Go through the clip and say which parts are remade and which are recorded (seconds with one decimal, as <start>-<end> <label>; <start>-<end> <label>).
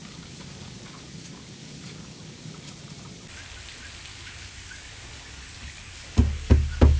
0.0-2.6 remade; 2.6-4.1 recorded; 4.1-7.0 remade